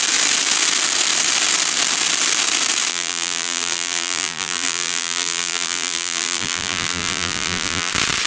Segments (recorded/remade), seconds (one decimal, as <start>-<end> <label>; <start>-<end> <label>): 0.0-2.9 recorded; 2.9-7.9 remade; 7.9-8.3 recorded